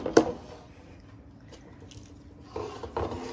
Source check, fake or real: real